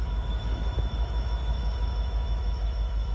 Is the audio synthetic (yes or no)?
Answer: yes